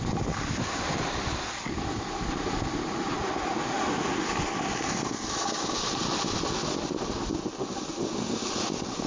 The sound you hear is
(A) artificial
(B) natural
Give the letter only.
B